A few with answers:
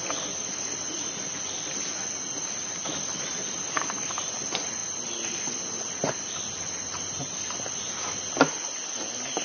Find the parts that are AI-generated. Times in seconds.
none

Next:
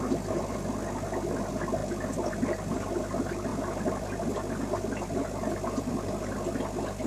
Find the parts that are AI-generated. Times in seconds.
none

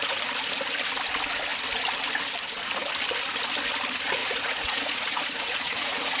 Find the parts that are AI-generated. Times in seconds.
4.2-6.2 (vocoder, Vocos)

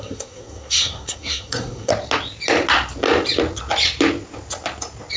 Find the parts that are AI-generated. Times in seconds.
0.0-1.9 (codec, SNAC)

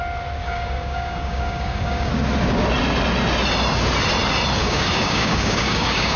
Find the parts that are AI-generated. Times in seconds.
0.4-2.1 (codec, DAC); 4.6-6.2

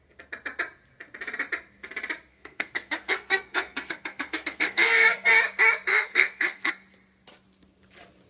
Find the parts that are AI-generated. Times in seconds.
2.3-5.3 (codec, SNAC); 5.9-6.7